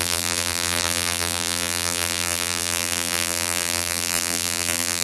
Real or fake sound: fake